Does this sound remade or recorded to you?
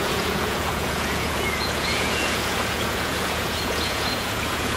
remade